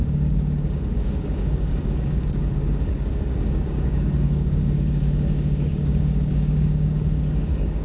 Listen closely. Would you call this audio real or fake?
fake